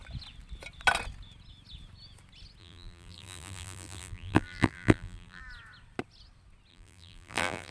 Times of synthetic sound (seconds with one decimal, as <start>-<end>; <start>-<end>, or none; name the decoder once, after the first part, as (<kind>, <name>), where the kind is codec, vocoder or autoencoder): 2.6-5.4 (vocoder, BigVGAN v2); 6.7-7.7